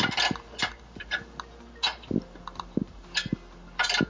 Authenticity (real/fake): real